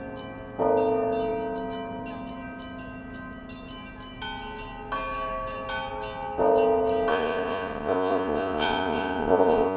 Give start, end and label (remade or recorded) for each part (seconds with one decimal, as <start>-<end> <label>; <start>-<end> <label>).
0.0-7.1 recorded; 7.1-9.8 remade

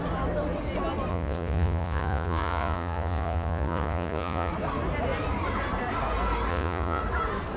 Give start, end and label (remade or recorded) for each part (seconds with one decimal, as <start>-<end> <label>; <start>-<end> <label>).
0.0-1.1 recorded; 1.1-4.5 remade; 4.5-6.5 recorded; 6.5-7.0 remade; 7.0-7.6 recorded

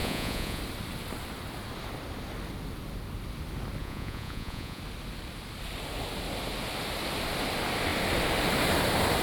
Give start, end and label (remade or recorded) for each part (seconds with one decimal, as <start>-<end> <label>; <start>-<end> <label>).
0.0-0.6 remade; 0.6-3.8 recorded; 3.8-4.8 remade; 4.8-9.2 recorded